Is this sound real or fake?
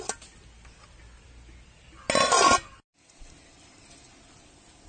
real